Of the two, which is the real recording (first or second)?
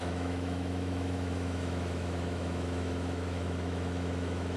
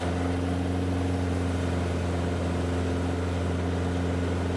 second